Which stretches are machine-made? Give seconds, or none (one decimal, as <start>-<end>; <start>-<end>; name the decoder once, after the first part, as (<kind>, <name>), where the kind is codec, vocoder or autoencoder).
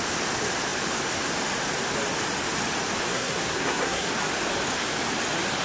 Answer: 3.1-4.1 (codec, SNAC)